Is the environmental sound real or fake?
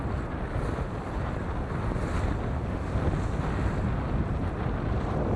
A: real